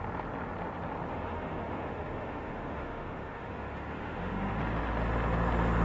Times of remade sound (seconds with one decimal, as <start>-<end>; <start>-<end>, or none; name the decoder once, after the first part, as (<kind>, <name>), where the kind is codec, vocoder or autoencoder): 1.1-4.6 (autoencoder, DAC-VAE)

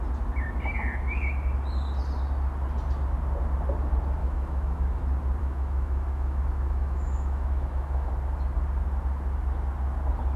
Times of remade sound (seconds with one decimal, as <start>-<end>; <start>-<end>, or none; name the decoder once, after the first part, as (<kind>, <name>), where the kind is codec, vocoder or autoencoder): 4.2-5.0 (autoencoder, DAC-VAE); 5.4-8.1

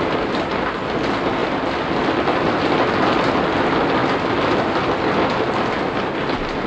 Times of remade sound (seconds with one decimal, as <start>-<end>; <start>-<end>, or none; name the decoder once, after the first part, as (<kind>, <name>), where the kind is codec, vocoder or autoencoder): none

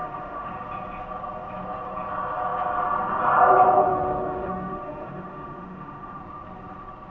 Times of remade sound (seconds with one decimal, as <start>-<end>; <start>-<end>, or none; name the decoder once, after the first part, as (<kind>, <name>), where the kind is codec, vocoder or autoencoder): 0.0-0.5 (autoencoder, DAC-VAE); 3.8-6.2

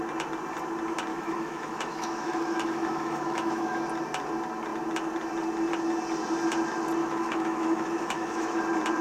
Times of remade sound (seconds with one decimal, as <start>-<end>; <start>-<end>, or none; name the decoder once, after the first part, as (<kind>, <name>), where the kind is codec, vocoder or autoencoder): 1.1-3.8 (autoencoder, DAC-VAE); 7.0-8.6